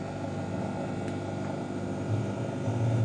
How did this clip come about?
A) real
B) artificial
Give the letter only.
A